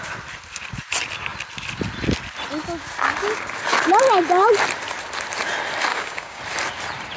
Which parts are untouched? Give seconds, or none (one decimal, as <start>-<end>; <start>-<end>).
0.0-5.9; 6.4-7.2